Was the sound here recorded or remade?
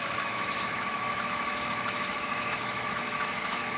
remade